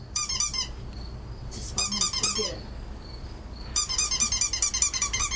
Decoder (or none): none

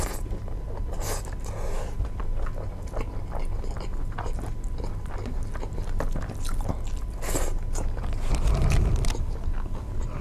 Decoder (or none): none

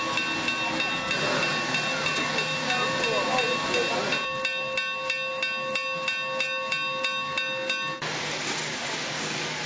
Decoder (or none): none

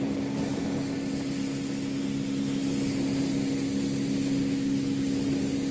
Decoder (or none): none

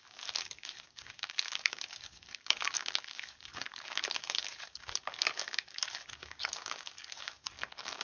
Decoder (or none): codec, DAC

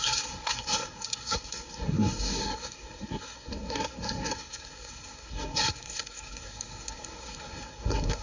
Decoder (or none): codec, SNAC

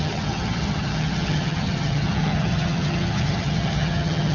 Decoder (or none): vocoder, HiFi-GAN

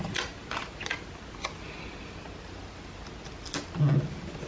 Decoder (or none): none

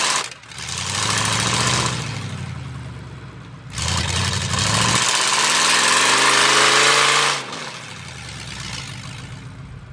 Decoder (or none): none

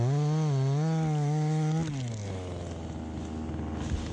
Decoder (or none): none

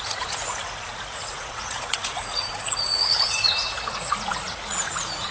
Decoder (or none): vocoder, Vocos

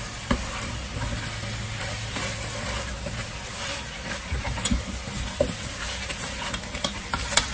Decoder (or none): none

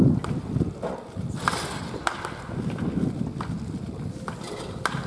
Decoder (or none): none